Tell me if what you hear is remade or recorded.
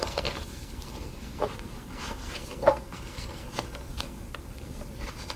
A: remade